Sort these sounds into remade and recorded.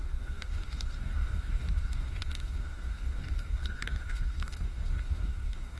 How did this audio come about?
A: remade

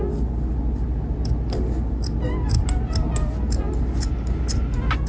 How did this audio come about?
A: recorded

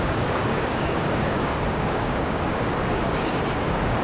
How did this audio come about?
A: remade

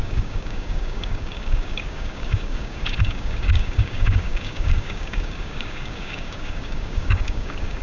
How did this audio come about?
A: remade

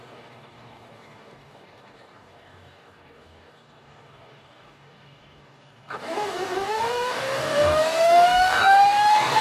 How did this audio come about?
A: remade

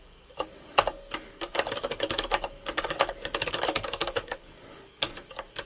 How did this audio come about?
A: remade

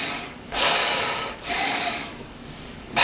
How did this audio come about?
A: remade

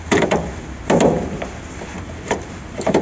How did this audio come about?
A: recorded